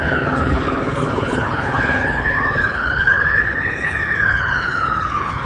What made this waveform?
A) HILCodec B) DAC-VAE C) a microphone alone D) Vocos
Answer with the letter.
A